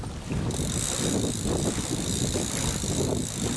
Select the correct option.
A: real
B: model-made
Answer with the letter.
A